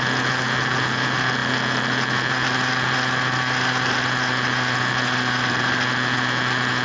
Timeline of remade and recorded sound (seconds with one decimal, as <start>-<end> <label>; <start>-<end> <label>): 0.0-6.8 recorded